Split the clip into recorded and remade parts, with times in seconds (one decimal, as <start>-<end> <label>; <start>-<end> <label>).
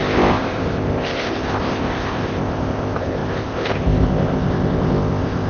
0.0-5.5 remade